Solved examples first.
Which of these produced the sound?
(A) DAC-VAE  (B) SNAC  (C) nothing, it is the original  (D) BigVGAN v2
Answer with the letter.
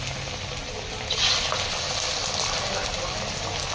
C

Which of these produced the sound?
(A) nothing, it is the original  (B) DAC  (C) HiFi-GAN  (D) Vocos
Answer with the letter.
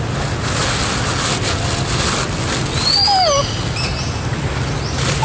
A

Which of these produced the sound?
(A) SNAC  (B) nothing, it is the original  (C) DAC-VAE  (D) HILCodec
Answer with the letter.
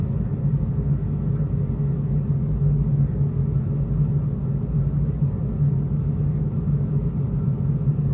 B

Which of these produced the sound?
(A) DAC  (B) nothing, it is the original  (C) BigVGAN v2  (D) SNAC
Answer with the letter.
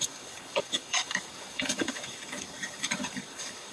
A